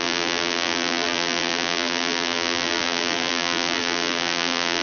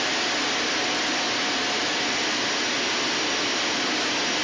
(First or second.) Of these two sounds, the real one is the second